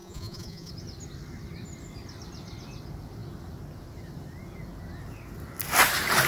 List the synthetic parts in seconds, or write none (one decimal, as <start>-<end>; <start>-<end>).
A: 0.0-0.7